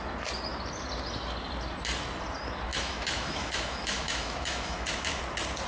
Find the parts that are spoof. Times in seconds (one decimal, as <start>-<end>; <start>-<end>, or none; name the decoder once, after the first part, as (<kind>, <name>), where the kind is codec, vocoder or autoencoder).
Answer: 2.7-5.2 (autoencoder, DAC-VAE)